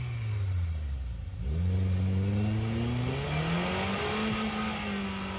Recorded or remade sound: recorded